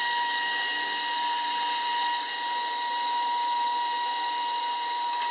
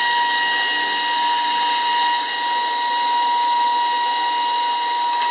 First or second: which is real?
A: second